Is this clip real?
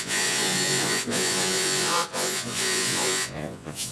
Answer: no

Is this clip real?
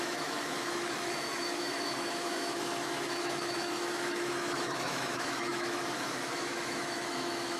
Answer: no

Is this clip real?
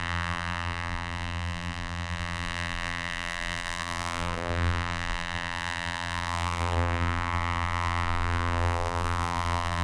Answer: no